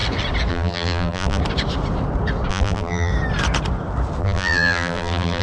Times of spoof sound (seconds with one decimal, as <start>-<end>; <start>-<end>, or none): 0.5-1.4; 2.5-3.1; 4.2-5.4